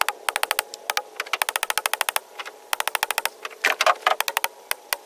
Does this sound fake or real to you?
real